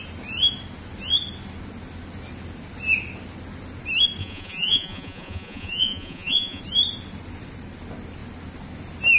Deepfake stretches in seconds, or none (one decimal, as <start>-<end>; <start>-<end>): 4.2-6.6